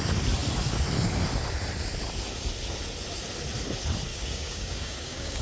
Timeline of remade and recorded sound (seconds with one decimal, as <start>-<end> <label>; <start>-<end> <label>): 0.0-4.1 recorded; 4.1-5.4 remade